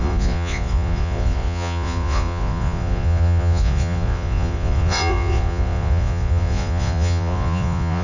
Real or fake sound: fake